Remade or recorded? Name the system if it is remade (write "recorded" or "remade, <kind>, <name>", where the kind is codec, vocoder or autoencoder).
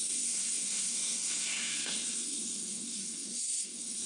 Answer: remade, codec, SNAC